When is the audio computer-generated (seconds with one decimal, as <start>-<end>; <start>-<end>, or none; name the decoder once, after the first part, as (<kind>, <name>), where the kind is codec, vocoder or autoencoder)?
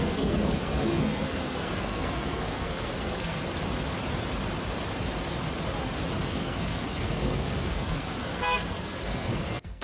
0.0-3.4 (codec, SNAC); 6.2-9.8